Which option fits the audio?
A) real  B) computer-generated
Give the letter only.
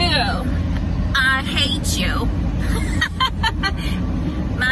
A